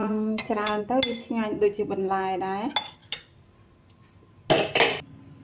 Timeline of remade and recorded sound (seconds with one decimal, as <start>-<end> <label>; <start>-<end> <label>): 0.0-0.8 remade; 0.8-5.4 recorded